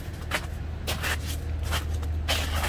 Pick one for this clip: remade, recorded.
recorded